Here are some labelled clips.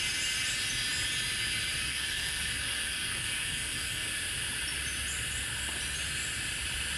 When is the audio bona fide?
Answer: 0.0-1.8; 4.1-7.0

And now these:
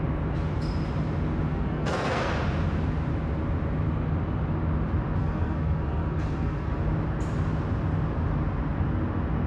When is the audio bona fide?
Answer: 0.0-1.5; 2.3-5.2; 6.8-9.5

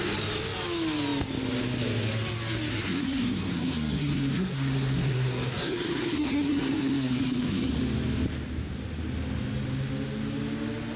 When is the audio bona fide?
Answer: 0.0-2.7; 7.8-11.0

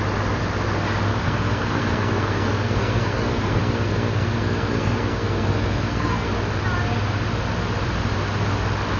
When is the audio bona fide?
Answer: 0.0-1.1; 6.3-9.0

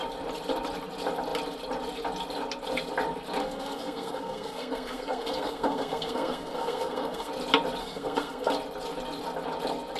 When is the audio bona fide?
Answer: 0.0-3.4; 7.3-7.8; 8.5-10.0

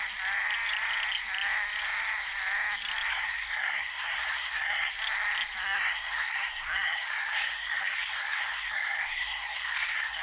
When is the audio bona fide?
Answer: 0.0-3.1; 4.9-5.6